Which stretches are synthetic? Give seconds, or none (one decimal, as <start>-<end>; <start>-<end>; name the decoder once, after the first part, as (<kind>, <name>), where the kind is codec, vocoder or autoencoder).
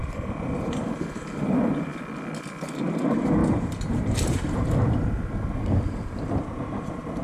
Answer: 0.0-1.9 (vocoder, BigVGAN v2); 2.9-7.2